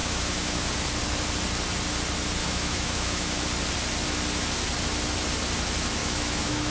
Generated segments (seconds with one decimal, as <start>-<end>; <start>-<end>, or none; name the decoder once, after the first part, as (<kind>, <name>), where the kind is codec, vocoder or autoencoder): 0.0-0.7 (autoencoder, DAC-VAE); 2.4-3.4; 6.0-6.7